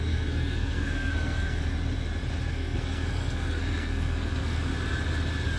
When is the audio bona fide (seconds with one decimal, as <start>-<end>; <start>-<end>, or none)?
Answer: 1.6-2.5; 4.7-5.6